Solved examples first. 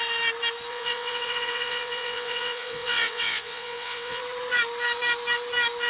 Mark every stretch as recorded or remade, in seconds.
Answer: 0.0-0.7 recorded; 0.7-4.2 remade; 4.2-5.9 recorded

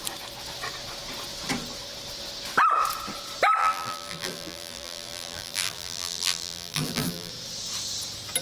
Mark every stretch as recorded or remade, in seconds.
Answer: 0.0-3.6 recorded; 3.6-7.3 remade; 7.3-8.4 recorded

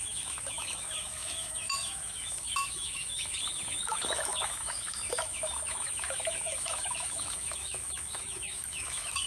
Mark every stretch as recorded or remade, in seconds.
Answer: 0.0-9.3 remade

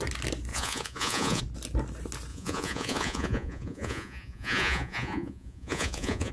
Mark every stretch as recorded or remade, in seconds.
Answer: 0.0-0.5 recorded; 0.5-1.4 remade; 1.4-2.3 recorded; 2.3-6.3 remade

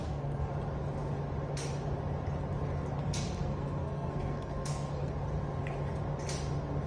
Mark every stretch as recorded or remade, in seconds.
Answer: 0.0-0.5 remade; 0.5-3.0 recorded; 3.0-5.1 remade; 5.1-6.9 recorded

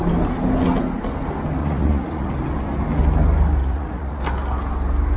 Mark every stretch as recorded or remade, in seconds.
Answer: 0.0-1.6 recorded; 1.6-2.3 remade; 2.3-3.6 recorded; 3.6-4.2 remade; 4.2-5.2 recorded